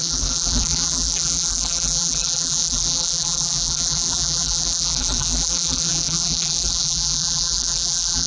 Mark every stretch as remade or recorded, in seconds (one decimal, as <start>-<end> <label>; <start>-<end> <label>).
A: 0.0-8.3 remade